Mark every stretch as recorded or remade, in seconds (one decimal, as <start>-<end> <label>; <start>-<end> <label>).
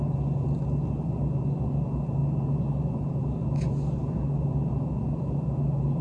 0.0-6.0 recorded